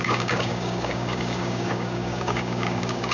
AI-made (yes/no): yes